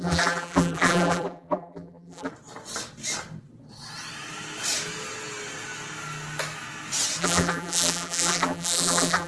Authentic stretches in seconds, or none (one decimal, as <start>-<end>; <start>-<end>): 2.3-7.2